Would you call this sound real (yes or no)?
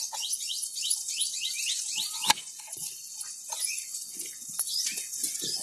no